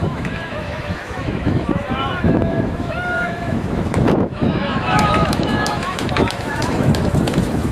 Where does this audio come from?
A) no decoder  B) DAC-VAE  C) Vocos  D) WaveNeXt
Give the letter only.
B